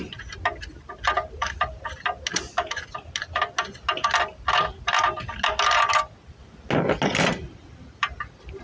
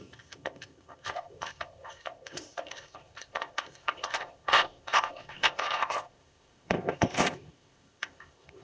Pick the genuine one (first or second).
first